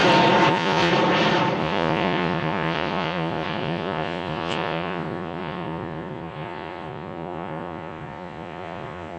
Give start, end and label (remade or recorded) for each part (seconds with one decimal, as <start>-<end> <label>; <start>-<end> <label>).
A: 0.0-0.5 recorded; 0.5-0.9 remade; 0.9-1.6 recorded; 1.6-9.2 remade